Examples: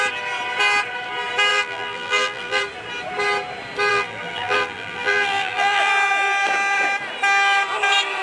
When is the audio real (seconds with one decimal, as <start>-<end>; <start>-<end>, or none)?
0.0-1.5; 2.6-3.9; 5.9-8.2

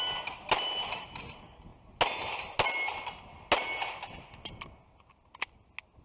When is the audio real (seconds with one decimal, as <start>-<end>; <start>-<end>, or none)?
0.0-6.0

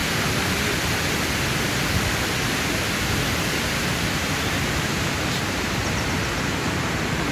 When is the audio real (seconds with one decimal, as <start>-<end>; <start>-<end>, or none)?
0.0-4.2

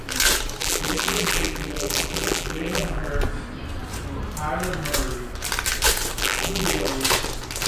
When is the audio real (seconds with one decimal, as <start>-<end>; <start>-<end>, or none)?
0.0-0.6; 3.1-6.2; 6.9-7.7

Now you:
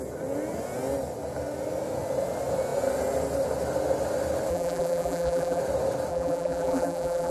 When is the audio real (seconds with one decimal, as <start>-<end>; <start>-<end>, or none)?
0.0-4.5; 5.6-6.1

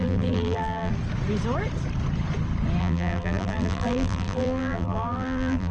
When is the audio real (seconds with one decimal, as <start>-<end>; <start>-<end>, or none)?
0.9-2.8

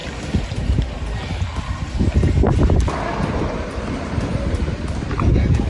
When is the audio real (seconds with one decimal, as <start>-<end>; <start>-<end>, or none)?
0.0-3.4; 4.3-5.7